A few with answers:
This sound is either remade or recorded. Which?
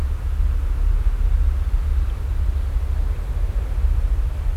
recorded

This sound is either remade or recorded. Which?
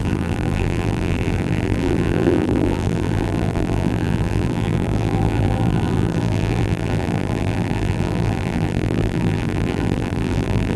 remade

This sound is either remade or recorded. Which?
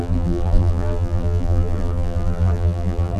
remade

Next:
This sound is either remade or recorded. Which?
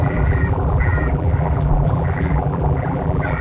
remade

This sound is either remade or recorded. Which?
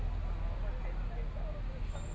recorded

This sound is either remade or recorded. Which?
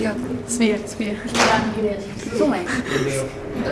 remade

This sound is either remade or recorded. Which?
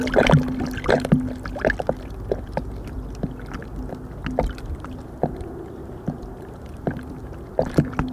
recorded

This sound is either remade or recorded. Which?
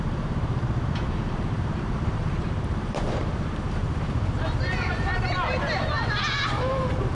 remade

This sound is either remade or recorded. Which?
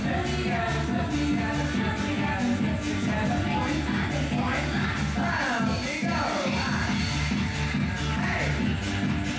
recorded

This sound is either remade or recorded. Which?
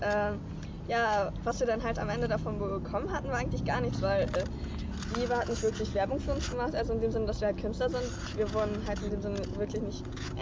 recorded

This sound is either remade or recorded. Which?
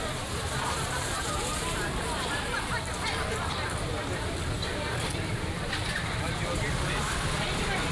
remade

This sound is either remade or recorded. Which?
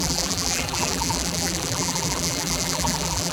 remade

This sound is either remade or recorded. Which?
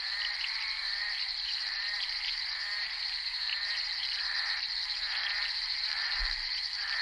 remade